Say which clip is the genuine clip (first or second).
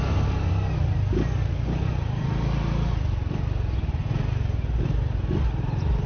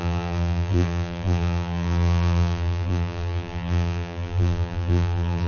first